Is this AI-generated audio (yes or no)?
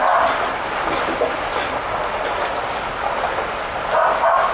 no